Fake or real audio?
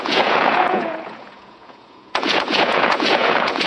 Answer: fake